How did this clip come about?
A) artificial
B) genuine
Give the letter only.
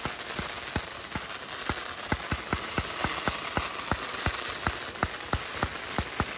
B